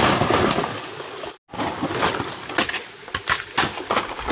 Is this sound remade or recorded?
recorded